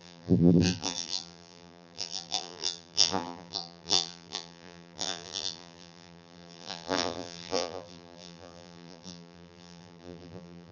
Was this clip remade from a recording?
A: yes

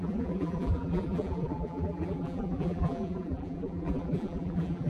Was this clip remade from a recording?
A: yes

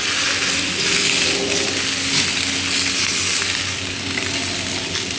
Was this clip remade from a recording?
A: no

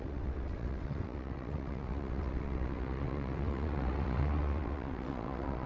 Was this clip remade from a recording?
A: yes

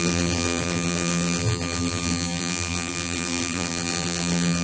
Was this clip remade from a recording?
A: yes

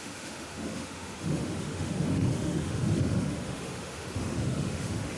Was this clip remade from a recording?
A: yes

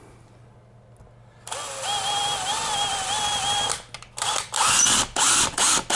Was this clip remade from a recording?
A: no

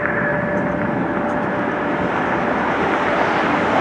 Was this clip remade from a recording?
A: no